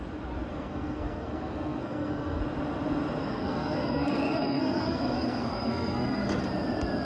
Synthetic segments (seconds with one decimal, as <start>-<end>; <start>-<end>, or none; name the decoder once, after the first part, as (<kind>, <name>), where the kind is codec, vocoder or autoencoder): 0.5-2.4 (codec, SNAC); 3.3-6.4